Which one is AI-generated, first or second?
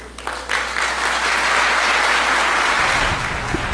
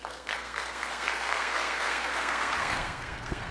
second